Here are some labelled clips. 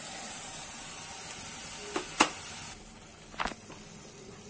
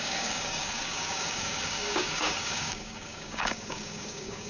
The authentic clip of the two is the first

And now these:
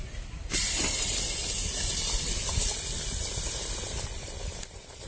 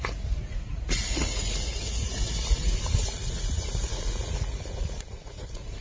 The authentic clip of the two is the first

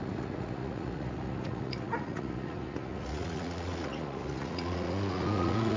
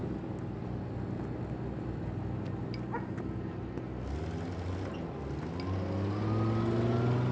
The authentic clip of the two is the second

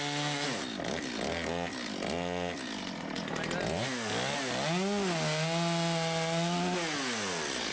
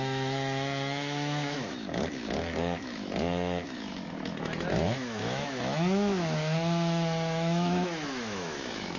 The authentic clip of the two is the first